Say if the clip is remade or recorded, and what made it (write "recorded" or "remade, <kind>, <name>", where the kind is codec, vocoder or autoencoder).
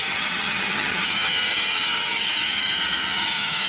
remade, vocoder, HiFi-GAN